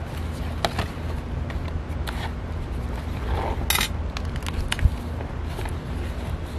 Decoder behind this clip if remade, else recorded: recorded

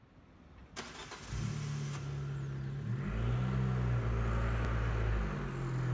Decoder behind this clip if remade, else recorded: recorded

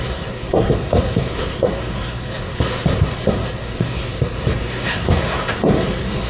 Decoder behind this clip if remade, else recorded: remade, codec, SNAC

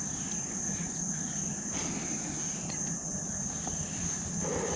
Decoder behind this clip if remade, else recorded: recorded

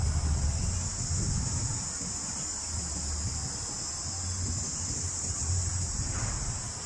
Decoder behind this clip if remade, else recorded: recorded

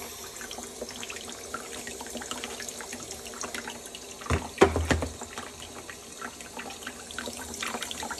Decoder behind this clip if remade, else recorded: recorded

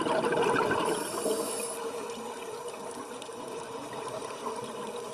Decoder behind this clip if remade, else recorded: recorded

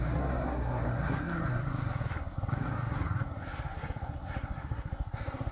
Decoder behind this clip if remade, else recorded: remade, codec, SNAC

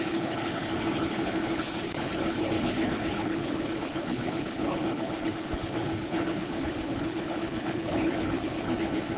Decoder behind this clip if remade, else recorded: remade, codec, HILCodec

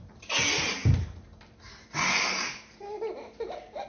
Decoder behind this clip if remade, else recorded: recorded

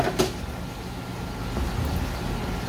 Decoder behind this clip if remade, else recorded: recorded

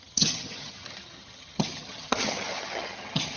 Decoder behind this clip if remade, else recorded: remade, vocoder, HiFi-GAN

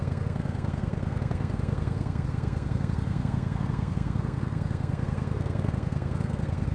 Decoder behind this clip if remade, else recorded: remade, codec, SNAC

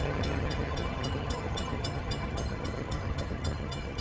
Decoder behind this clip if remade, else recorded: remade, vocoder, HiFi-GAN